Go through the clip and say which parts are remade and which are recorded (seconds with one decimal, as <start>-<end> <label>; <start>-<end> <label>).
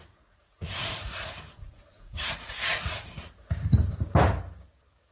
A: 0.0-3.1 remade; 3.1-5.1 recorded